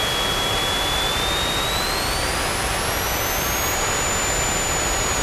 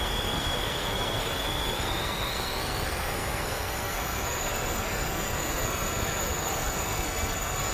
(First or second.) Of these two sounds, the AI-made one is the second